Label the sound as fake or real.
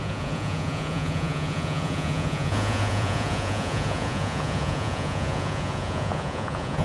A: fake